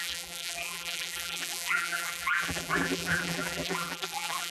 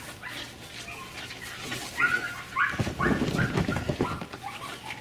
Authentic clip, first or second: second